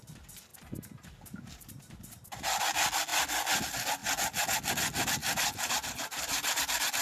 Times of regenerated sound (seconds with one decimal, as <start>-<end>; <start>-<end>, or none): 0.5-2.6; 5.2-6.6